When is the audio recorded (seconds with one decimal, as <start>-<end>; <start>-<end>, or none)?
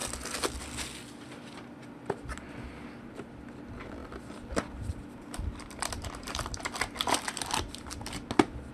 0.0-1.0; 2.3-4.0; 6.8-8.7